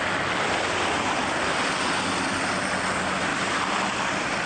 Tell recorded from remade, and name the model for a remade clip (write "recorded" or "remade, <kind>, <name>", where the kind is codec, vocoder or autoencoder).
recorded